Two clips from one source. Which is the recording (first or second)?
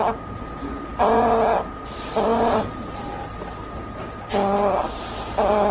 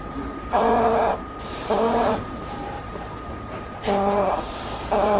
first